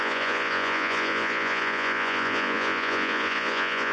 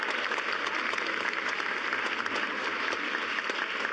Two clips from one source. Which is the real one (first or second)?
second